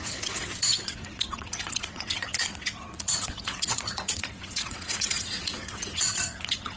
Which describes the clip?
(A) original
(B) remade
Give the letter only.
B